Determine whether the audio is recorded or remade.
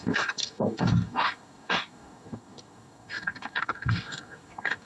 remade